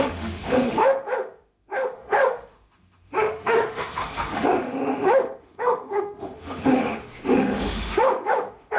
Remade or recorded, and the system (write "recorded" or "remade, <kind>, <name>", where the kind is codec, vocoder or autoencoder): remade, autoencoder, DAC-VAE